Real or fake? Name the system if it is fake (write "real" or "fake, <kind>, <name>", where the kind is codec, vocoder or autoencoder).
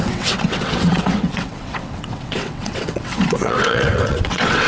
fake, vocoder, WaveNeXt